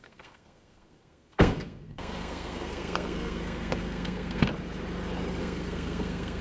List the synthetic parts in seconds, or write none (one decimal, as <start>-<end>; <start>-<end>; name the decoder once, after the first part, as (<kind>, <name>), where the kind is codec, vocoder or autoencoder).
0.0-4.5 (codec, SNAC); 5.4-6.4